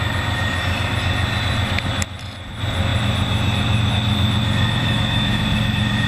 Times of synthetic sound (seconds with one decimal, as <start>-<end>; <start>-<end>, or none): 4.8-5.4